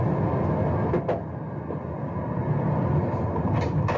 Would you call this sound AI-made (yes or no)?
no